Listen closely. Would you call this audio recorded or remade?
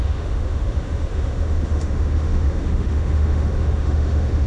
remade